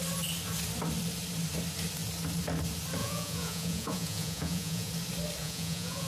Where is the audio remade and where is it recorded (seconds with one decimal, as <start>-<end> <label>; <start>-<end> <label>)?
0.0-3.0 recorded; 3.0-4.9 remade; 4.9-5.4 recorded; 5.4-6.1 remade